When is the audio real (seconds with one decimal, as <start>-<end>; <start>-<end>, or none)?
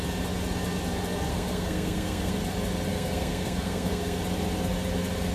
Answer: 0.0-1.3; 2.3-2.9; 4.2-5.3